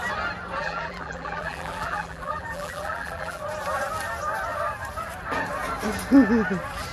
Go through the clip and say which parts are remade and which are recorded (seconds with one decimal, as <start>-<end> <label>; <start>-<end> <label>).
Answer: 0.0-0.6 recorded; 0.6-3.4 remade; 3.4-6.9 recorded